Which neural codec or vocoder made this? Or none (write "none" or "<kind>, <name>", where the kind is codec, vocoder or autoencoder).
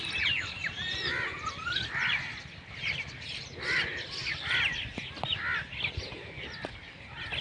none